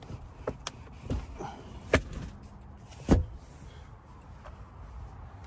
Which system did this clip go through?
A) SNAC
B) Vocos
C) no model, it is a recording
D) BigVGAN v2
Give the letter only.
C